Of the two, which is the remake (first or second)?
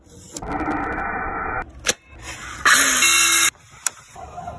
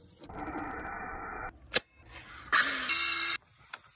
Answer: second